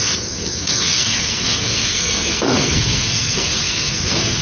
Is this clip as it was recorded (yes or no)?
no